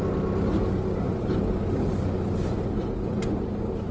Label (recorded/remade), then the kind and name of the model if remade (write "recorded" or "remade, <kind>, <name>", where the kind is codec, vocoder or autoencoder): recorded